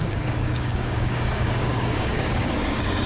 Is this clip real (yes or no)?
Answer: no